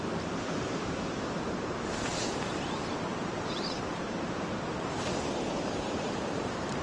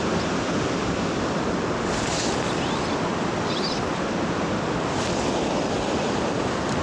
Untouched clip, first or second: second